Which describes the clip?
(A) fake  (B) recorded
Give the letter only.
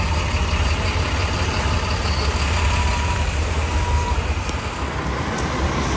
B